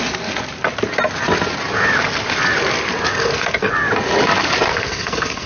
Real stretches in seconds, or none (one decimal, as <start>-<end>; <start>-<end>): 0.0-3.1; 3.7-4.7